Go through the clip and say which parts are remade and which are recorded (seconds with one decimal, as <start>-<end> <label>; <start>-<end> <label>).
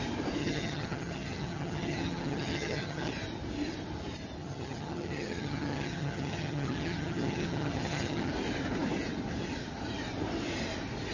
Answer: 0.0-0.4 recorded; 0.4-3.1 remade; 3.1-4.4 recorded; 4.4-8.3 remade; 8.3-11.1 recorded